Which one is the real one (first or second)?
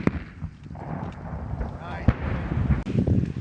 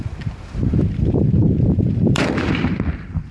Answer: first